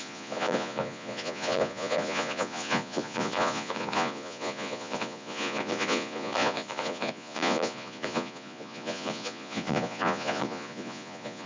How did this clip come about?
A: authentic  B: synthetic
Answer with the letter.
B